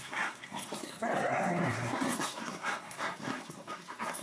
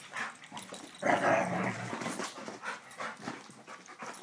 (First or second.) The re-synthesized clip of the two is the first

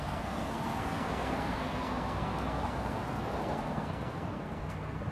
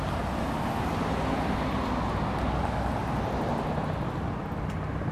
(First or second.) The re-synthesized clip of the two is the first